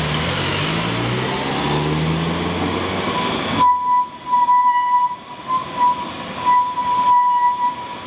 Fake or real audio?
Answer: real